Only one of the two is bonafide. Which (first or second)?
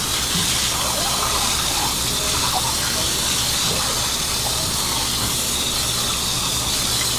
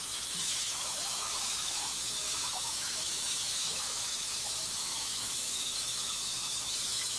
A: first